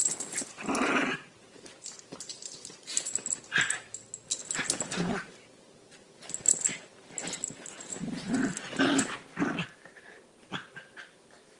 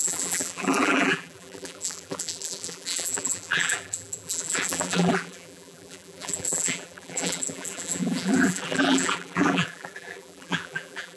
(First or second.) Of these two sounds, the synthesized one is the second